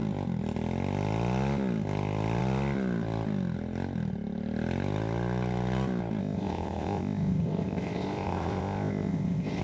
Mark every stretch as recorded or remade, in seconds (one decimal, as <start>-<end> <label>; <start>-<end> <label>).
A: 0.0-6.2 recorded; 6.2-9.6 remade